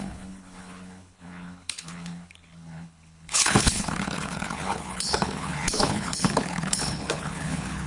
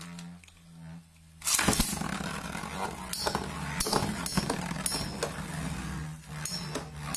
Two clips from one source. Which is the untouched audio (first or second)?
second